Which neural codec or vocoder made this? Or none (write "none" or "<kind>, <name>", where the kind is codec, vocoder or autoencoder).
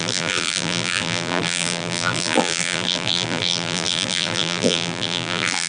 vocoder, BigVGAN v2